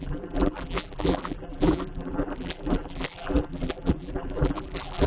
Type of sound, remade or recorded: remade